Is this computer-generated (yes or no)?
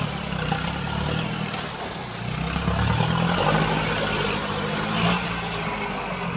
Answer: no